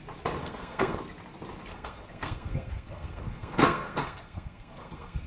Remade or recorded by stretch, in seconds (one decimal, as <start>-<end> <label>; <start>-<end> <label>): 0.0-0.4 recorded; 0.4-1.0 remade; 1.0-1.7 recorded; 1.7-5.3 remade